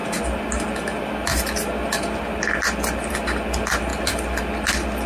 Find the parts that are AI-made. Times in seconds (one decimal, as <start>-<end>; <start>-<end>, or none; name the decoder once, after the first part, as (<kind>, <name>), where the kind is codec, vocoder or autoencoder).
3.9-4.4 (vocoder, BigVGAN v2)